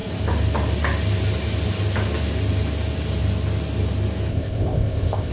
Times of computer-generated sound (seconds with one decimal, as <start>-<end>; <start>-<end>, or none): 4.3-5.3